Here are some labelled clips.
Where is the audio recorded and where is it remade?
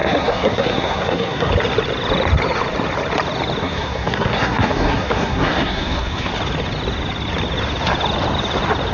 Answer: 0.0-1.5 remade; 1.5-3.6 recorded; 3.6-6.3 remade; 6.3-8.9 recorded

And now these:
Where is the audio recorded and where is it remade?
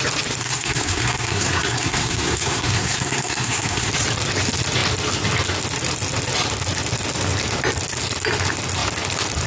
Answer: 0.0-0.4 recorded; 0.4-3.9 remade; 3.9-9.5 recorded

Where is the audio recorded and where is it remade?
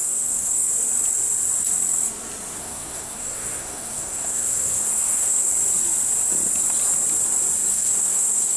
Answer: 0.0-0.7 remade; 0.7-2.6 recorded; 2.6-5.5 remade; 5.5-7.7 recorded; 7.7-8.6 remade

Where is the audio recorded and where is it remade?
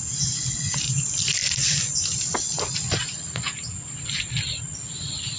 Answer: 0.0-5.4 recorded